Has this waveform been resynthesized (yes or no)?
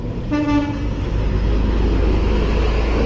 no